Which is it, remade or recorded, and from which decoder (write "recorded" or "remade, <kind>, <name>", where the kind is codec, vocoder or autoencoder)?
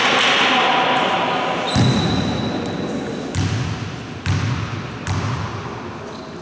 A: recorded